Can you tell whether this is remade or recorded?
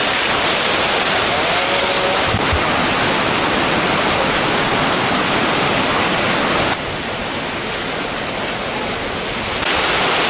recorded